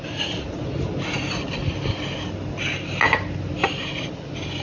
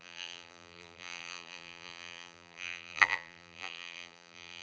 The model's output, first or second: second